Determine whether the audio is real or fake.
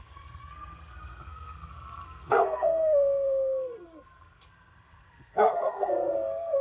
fake